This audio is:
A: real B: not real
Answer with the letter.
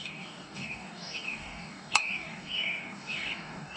B